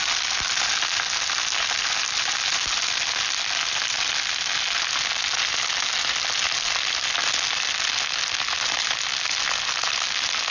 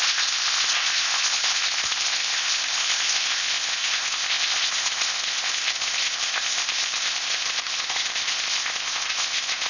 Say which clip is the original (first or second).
first